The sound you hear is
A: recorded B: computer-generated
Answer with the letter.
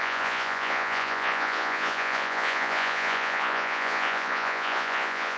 B